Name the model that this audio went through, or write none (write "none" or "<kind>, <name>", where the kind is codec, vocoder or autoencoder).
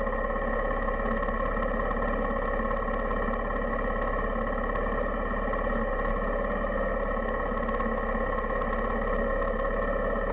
none